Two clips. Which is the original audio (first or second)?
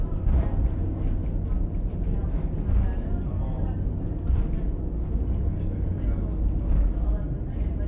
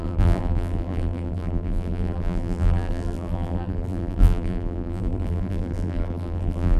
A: first